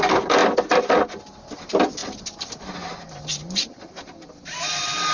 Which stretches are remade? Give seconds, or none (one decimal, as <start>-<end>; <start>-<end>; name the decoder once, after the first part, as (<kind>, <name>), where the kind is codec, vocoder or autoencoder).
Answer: none